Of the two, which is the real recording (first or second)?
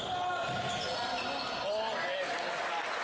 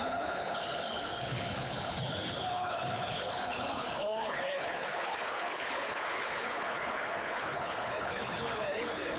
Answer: first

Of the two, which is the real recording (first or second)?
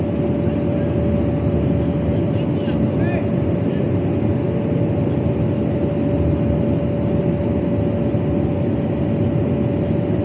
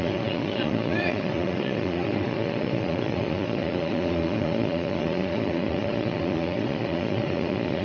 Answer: first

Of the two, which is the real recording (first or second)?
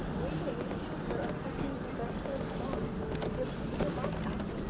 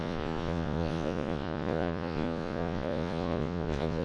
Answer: first